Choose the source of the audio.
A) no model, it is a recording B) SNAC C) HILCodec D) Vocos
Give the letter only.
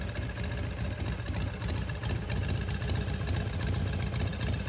A